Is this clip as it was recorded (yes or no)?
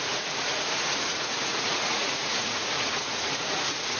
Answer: no